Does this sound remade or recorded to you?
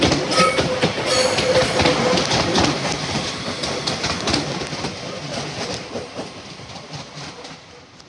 recorded